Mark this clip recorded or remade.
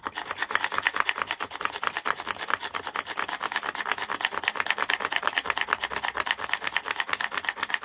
recorded